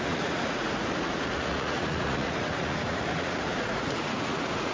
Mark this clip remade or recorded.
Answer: remade